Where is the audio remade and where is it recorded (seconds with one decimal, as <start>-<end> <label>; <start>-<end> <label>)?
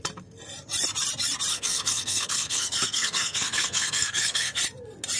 0.0-1.5 recorded; 1.5-4.6 remade; 4.6-5.2 recorded